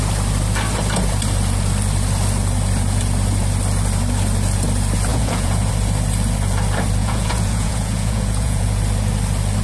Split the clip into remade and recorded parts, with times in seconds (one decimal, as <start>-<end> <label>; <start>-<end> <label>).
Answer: 0.0-5.1 recorded; 5.1-5.7 remade; 5.7-7.0 recorded; 7.0-8.8 remade; 8.8-9.6 recorded